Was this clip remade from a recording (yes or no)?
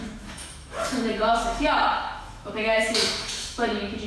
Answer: yes